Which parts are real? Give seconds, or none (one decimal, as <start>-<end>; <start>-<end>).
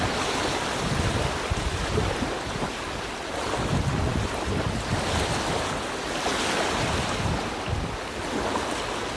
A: 0.0-9.2